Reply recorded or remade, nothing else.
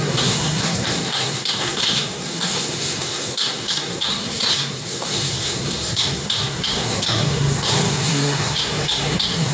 remade